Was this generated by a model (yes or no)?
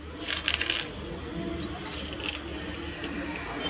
no